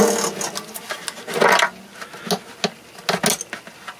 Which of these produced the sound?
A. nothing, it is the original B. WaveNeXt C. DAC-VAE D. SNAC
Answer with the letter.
A